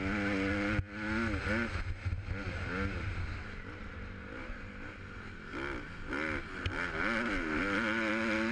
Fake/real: real